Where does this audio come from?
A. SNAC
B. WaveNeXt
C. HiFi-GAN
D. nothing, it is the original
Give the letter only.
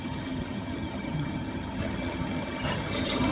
C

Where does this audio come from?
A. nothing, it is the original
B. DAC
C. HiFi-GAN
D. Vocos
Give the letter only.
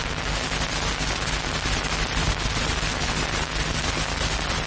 A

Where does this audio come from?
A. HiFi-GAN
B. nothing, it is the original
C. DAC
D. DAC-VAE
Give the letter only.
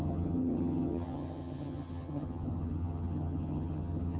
A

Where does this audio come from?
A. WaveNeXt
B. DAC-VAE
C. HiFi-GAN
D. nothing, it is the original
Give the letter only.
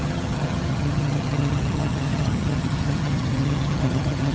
C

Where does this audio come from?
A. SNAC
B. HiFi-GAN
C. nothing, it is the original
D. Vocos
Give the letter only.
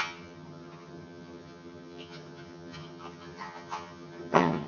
B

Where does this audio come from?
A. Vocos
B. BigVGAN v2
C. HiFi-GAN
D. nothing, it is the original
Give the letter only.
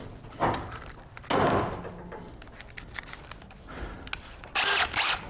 D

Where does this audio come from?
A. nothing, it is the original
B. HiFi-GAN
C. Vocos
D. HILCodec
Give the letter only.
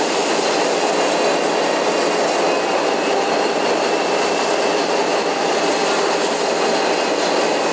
A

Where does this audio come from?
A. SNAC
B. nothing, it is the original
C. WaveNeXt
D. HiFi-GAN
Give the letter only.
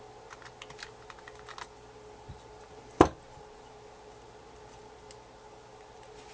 B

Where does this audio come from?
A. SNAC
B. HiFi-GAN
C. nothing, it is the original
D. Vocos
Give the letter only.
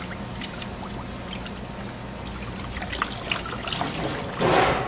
C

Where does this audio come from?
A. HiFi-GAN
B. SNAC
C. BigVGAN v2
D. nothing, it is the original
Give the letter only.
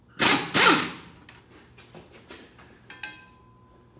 D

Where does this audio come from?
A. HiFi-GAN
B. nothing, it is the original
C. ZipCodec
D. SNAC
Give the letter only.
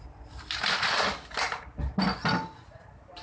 B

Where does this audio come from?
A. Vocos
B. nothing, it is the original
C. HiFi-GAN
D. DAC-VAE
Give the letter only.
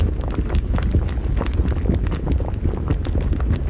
B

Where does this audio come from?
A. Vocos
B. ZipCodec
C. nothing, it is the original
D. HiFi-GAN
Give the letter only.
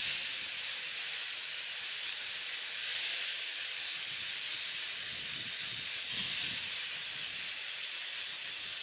C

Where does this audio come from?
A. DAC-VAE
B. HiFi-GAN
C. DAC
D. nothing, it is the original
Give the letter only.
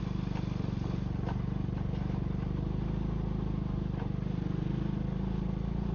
D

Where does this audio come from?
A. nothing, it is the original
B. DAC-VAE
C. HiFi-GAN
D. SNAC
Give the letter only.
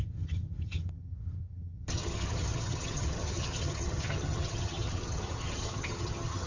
C